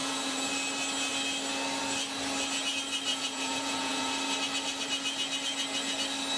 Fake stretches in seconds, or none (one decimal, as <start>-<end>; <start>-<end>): 0.0-0.5; 3.1-4.1